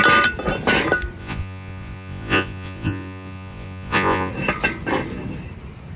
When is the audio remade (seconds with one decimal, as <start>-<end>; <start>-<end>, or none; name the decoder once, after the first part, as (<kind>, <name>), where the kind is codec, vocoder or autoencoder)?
1.2-4.3 (vocoder, Vocos)

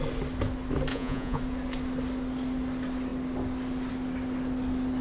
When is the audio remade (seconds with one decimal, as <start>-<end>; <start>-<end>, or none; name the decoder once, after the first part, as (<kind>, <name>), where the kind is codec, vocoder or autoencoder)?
0.9-1.4 (vocoder, Vocos)